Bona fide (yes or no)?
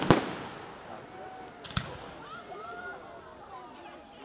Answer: yes